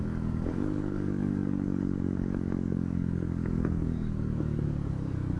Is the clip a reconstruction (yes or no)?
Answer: yes